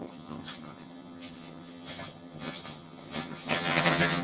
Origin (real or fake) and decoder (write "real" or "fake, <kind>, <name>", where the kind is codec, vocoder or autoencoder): fake, vocoder, HiFi-GAN